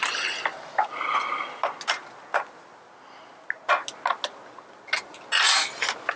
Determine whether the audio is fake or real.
real